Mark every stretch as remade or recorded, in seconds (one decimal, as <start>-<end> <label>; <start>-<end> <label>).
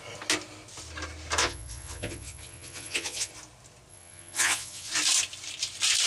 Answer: 0.0-1.4 recorded; 1.4-3.3 remade; 3.3-3.9 recorded; 3.9-4.9 remade; 4.9-6.1 recorded